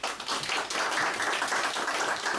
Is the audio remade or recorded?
recorded